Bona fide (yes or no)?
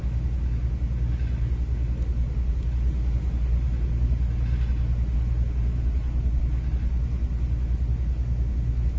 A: yes